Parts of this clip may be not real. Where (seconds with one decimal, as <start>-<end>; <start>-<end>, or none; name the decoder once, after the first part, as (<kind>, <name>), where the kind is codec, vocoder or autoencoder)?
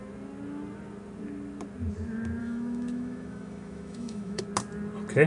2.4-4.4 (autoencoder, DAC-VAE)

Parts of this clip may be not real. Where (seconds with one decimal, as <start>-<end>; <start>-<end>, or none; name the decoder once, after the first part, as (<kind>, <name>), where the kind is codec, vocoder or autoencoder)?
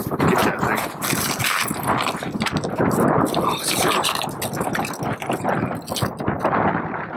none